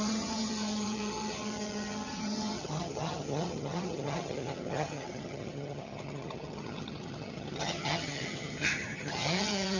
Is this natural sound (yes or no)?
no